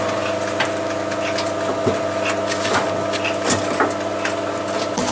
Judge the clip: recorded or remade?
recorded